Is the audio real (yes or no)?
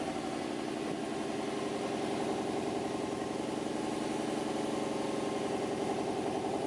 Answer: yes